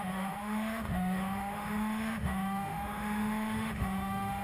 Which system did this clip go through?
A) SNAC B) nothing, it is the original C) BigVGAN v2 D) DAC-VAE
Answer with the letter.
D